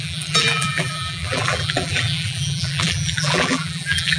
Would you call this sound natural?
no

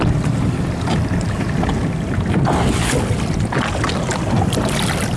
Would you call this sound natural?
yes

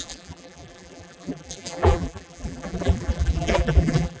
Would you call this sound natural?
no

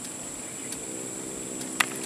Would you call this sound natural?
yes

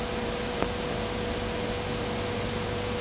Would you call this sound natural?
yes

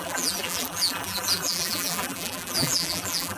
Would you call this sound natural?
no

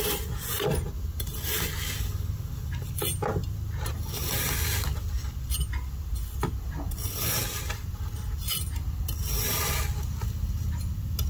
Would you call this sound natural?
yes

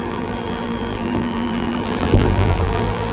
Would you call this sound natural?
no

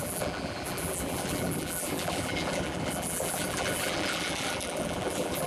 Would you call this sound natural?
no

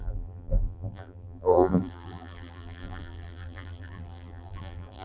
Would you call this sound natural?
no